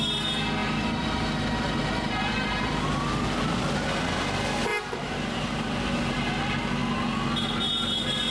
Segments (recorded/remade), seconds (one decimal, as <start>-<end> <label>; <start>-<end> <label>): 0.0-0.6 recorded; 0.6-2.7 remade; 2.7-4.7 recorded; 4.7-6.3 remade; 6.3-8.3 recorded